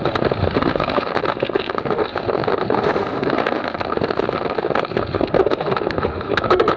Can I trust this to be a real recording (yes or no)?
no